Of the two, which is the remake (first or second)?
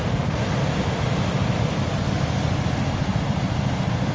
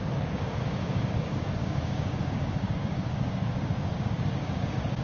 second